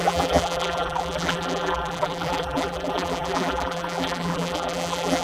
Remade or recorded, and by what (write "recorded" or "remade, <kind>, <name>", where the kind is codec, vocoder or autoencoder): remade, vocoder, BigVGAN v2